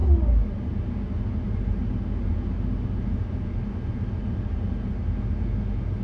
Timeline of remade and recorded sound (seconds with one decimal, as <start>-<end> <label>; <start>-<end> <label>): 0.0-6.0 recorded